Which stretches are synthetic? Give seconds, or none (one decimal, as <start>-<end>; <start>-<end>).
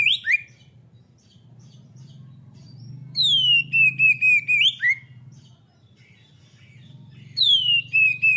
0.0-3.2; 6.8-8.4